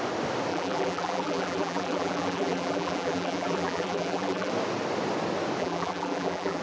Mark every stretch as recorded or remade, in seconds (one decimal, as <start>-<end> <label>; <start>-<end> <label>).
0.0-0.5 recorded; 0.5-4.5 remade; 4.5-5.6 recorded; 5.6-6.6 remade